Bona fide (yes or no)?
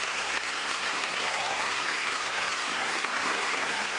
no